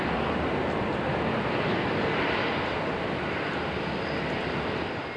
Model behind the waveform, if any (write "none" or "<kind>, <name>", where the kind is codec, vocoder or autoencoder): none